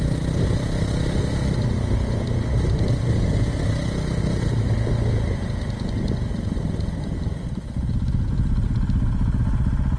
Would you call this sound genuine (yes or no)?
yes